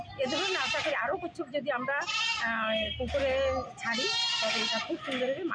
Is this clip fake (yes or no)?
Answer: no